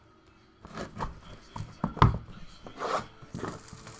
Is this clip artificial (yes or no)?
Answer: no